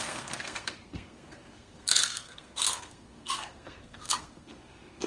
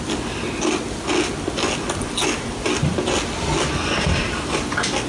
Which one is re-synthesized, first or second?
first